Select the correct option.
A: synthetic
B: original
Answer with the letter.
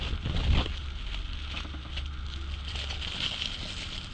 B